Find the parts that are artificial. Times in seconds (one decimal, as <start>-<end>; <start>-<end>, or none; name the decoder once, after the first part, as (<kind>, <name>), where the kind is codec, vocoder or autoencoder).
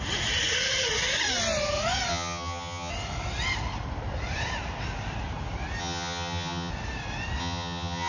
2.1-2.9 (vocoder, HiFi-GAN); 5.8-6.7; 7.4-8.1